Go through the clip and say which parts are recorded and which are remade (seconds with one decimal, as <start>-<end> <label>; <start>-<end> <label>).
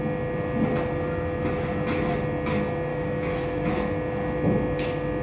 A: 0.0-2.9 recorded; 2.9-3.7 remade; 3.7-5.2 recorded